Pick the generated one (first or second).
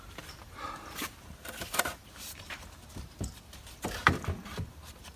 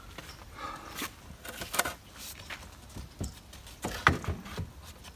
first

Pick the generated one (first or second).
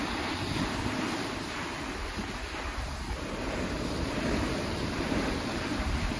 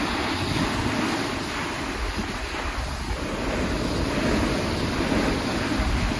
first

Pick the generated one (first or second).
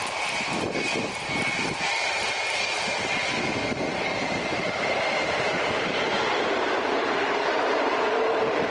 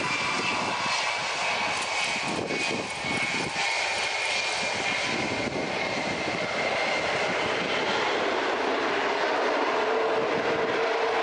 first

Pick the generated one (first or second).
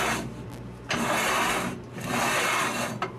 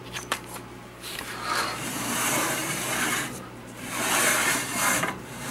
second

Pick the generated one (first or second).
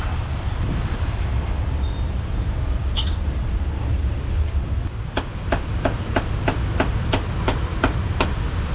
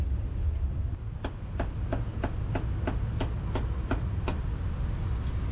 first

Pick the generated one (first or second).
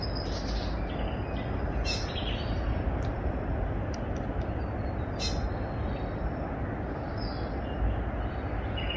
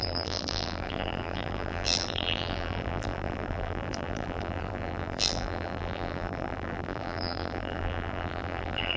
second